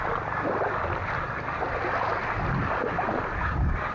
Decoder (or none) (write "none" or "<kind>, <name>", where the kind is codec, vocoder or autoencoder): none